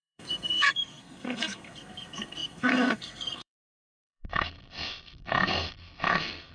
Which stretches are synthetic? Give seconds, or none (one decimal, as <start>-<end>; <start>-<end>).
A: 0.0-6.5